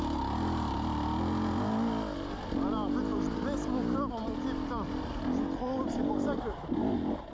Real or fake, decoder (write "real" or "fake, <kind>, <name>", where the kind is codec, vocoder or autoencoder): real